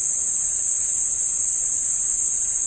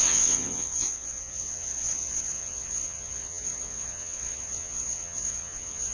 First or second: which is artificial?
second